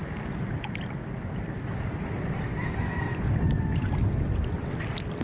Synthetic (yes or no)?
no